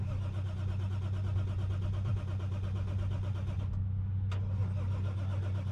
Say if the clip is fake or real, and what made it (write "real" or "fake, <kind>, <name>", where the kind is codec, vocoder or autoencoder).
real